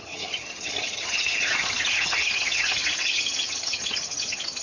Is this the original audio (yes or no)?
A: no